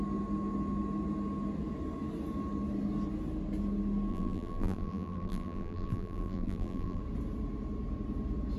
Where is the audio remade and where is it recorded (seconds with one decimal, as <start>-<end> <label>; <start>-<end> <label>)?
0.0-4.1 recorded; 4.1-7.0 remade; 7.0-8.6 recorded